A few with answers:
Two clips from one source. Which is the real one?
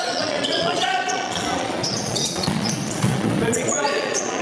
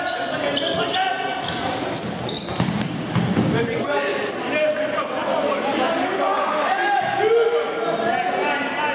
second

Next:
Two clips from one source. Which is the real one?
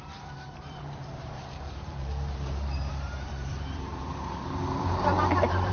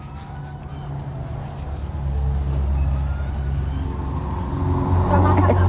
second